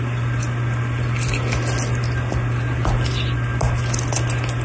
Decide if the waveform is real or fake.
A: real